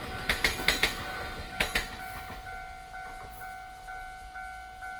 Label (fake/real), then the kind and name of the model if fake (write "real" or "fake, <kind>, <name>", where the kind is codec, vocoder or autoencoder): real